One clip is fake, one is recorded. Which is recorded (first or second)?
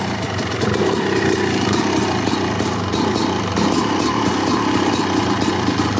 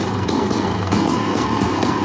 first